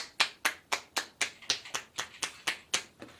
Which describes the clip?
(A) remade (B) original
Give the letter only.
B